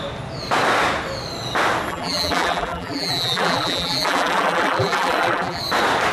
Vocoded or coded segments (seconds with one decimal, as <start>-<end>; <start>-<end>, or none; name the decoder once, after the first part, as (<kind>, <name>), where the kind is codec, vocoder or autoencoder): 1.9-5.6 (vocoder, BigVGAN v2)